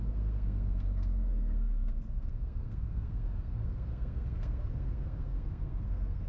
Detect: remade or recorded remade